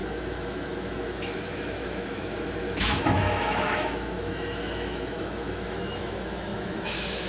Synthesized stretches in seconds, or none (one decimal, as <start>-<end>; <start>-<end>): 0.0-7.3